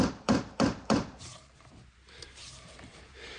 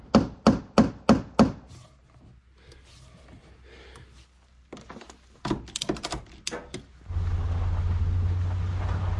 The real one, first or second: second